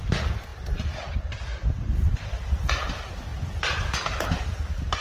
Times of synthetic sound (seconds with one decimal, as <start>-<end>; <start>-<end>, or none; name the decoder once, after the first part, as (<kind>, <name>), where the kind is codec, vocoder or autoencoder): none